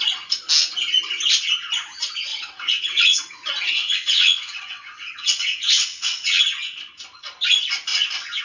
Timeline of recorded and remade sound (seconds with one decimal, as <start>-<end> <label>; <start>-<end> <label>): 0.0-2.3 recorded; 2.3-6.4 remade; 6.4-8.4 recorded